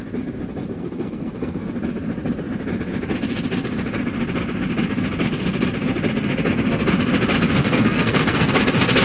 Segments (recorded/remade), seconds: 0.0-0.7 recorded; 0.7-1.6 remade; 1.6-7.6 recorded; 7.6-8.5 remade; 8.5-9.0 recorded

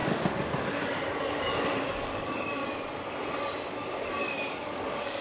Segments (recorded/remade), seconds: 0.0-2.6 remade; 2.6-4.1 recorded; 4.1-5.2 remade

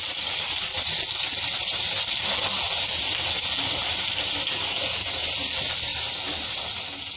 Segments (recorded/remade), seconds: 0.0-7.2 recorded

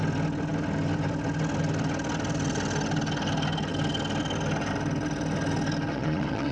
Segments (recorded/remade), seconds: 0.0-5.9 recorded; 5.9-6.5 remade

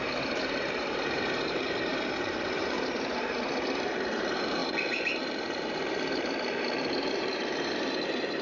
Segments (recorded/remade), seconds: 0.0-8.4 remade

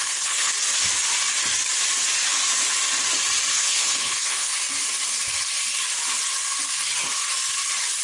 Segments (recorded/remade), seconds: 0.0-0.5 remade; 0.5-3.5 recorded; 3.5-4.5 remade; 4.5-8.0 recorded

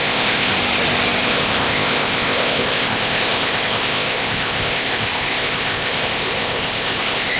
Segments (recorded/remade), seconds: 0.0-0.5 remade; 0.5-1.2 recorded; 1.2-7.4 remade